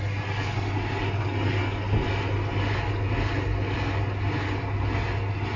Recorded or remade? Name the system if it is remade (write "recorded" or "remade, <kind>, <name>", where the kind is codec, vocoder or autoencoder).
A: recorded